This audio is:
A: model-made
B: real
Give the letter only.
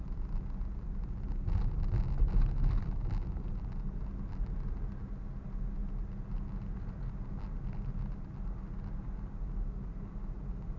B